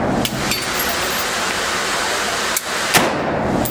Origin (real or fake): real